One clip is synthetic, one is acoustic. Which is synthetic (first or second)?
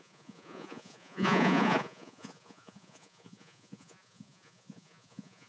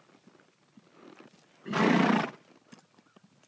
first